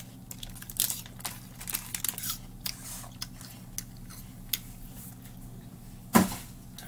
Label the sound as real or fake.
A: real